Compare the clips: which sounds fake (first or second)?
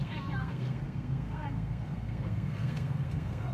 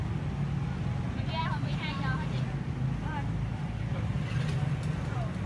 first